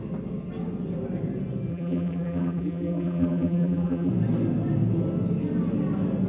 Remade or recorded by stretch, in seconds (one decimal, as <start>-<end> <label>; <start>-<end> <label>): 0.0-1.7 recorded; 1.7-4.1 remade; 4.1-6.3 recorded